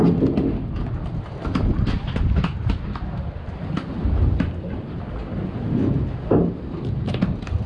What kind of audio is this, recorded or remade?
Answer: recorded